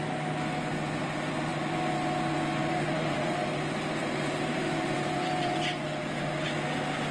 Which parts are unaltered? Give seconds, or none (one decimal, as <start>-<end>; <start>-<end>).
0.0-1.5; 2.0-2.6; 5.6-7.1